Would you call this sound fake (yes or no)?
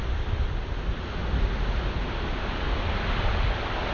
no